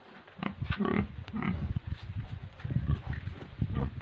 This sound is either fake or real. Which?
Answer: fake